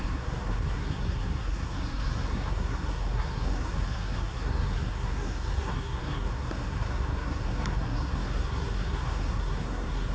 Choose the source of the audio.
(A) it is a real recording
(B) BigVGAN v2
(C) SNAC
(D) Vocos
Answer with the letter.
C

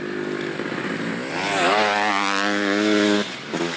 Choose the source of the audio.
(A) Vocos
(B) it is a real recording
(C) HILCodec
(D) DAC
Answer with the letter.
B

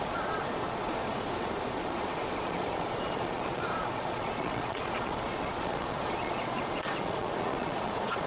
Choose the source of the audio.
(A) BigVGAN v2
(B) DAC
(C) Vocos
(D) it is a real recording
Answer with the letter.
C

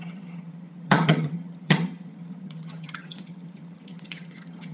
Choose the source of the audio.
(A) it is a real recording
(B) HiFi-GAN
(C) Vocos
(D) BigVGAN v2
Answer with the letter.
B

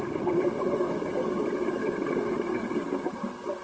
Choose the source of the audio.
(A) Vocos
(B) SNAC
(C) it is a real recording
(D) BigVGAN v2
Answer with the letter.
C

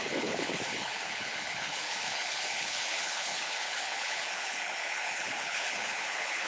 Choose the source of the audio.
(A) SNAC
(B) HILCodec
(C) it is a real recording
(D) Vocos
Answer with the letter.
B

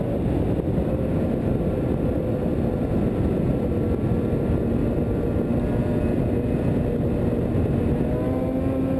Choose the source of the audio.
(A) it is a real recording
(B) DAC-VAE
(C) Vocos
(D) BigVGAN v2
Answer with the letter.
A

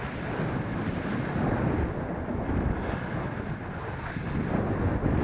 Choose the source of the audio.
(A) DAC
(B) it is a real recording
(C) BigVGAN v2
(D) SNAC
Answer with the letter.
B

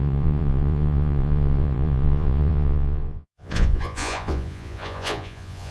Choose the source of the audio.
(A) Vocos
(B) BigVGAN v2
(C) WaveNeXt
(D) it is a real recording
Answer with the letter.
A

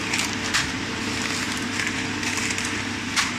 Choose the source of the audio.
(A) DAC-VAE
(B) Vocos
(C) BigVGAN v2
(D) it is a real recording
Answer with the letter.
D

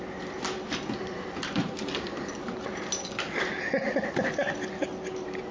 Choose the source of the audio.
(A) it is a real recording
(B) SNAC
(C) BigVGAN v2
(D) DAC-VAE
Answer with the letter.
A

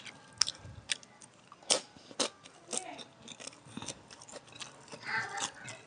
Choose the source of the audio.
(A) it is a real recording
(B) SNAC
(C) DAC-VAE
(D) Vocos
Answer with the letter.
A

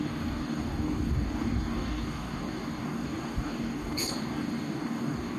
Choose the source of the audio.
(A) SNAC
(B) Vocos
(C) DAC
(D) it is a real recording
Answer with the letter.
C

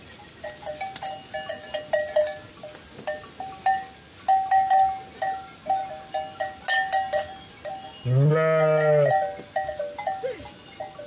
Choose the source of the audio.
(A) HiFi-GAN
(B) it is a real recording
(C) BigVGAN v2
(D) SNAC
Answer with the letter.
B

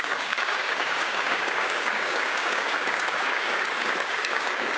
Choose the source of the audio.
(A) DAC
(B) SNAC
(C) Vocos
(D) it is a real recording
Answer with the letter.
A